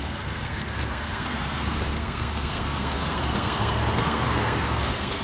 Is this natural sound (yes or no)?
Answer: no